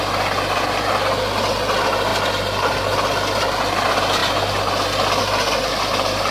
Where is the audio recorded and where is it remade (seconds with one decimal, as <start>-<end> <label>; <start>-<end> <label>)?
0.0-6.3 recorded